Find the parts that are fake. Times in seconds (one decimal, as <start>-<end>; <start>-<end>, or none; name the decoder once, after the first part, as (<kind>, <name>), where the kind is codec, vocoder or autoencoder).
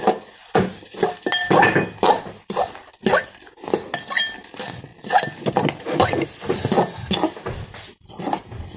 none